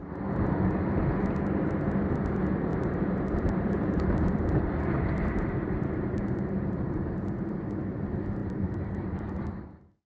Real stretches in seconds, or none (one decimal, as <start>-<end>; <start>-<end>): 0.0-2.7; 7.7-8.4; 9.3-10.1